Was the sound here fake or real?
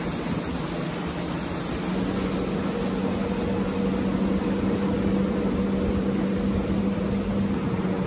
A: real